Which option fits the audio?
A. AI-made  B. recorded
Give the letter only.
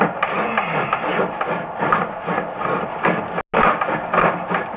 B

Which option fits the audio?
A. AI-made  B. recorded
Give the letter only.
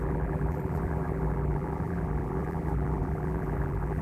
A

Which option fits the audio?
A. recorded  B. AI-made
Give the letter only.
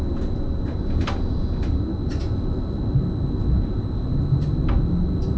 A